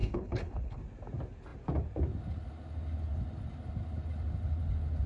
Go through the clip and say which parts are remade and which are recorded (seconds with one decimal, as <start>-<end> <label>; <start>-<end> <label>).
0.0-0.8 remade; 0.8-5.1 recorded